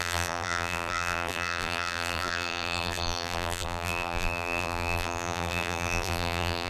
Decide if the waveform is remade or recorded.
remade